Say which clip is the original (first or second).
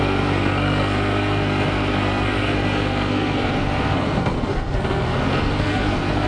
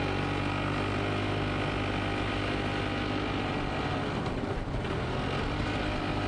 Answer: second